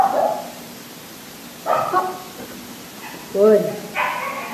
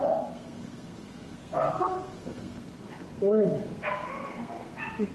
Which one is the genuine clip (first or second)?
first